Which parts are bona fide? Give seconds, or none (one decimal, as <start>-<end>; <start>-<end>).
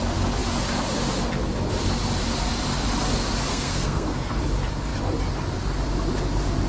0.0-3.5; 4.4-6.7